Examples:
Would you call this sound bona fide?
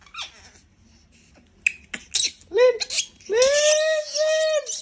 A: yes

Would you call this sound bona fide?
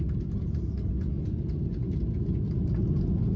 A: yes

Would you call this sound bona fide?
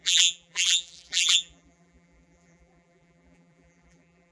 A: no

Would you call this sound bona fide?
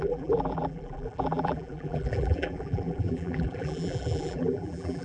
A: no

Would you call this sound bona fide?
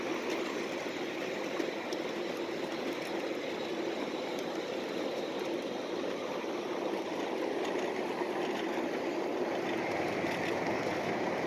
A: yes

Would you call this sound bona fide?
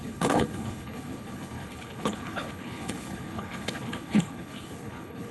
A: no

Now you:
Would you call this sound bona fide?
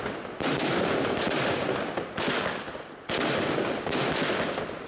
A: yes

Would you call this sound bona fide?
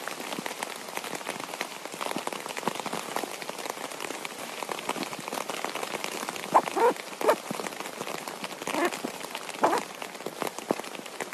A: yes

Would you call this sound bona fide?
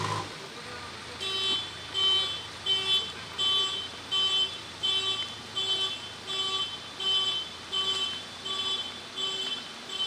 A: yes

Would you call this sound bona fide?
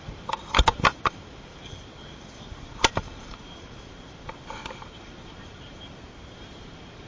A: no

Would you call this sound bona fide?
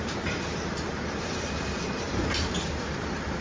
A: no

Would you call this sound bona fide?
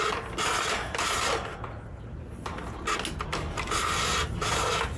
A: yes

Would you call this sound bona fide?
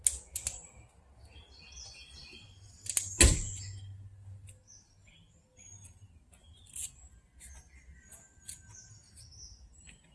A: yes